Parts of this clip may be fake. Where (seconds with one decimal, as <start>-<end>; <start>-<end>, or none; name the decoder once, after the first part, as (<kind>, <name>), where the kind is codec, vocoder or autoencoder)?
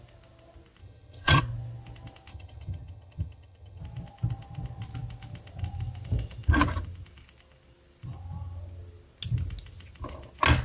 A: 0.8-1.4 (vocoder, HiFi-GAN); 2.3-3.8